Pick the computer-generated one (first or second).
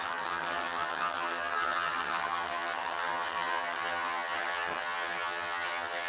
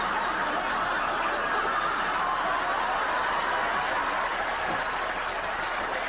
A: first